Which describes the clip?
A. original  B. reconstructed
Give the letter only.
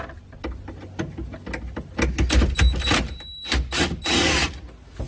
A